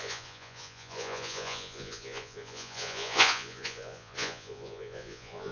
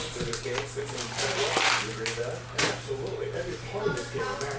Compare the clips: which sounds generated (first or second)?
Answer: first